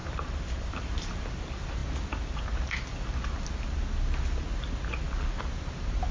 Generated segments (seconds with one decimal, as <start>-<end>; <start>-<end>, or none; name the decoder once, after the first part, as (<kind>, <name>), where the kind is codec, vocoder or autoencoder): 0.0-1.4 (vocoder, BigVGAN v2)